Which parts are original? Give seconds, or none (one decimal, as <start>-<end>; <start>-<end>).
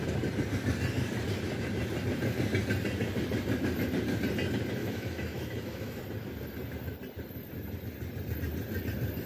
0.0-4.8; 6.0-9.3